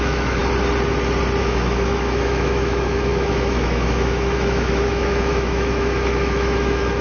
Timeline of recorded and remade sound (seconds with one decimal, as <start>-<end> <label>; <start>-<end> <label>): 0.0-0.4 remade; 0.4-1.4 recorded; 1.4-7.0 remade